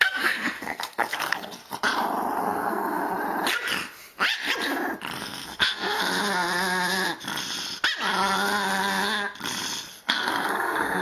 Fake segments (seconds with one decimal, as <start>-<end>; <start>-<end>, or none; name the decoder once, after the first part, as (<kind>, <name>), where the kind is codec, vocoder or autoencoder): 0.0-1.6 (codec, SNAC); 2.4-3.0; 5.2-6.0; 9.9-11.0